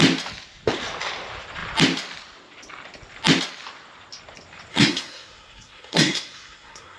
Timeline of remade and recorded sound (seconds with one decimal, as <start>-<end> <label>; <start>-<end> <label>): 0.0-4.7 recorded; 4.7-7.0 remade